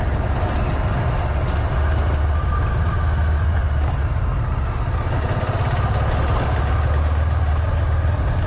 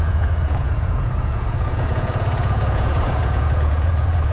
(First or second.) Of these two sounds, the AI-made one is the second